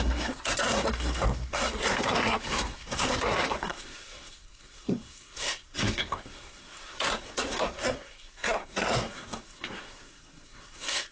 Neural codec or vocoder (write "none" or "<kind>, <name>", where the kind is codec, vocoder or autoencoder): codec, SNAC